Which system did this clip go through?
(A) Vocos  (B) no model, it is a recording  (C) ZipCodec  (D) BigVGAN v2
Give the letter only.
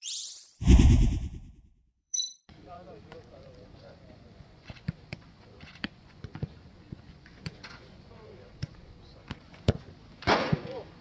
A